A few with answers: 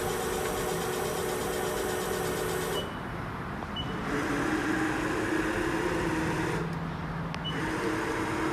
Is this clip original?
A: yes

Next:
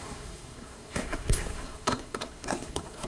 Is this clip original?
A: no